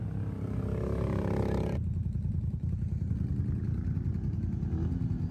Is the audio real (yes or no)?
yes